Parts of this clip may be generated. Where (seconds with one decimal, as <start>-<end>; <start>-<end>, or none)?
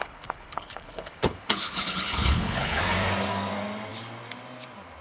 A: 0.0-2.8